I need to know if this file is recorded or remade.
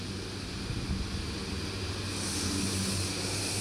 recorded